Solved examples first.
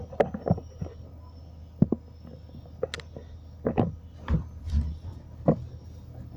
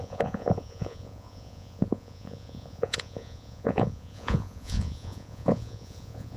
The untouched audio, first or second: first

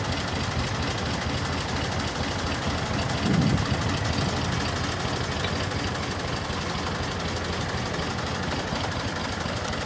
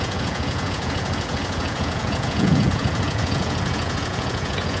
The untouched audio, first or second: first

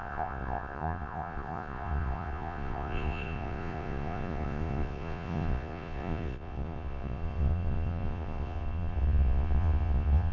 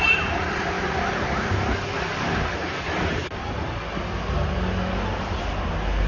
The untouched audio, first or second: second